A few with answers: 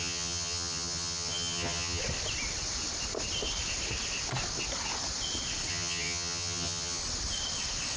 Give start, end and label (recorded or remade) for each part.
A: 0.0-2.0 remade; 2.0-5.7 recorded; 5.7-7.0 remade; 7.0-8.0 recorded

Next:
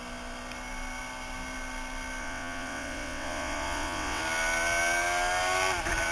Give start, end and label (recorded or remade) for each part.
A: 0.0-2.2 recorded; 2.2-4.2 remade; 4.2-6.1 recorded